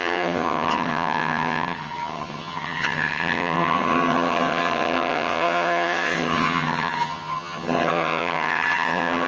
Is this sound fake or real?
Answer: fake